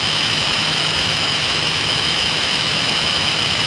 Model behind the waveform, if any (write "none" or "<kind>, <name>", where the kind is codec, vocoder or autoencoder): autoencoder, DAC-VAE